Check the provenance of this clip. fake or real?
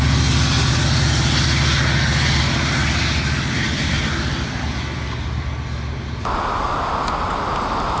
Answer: real